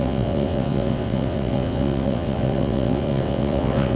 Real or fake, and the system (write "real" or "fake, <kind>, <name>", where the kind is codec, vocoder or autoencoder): fake, vocoder, WaveNeXt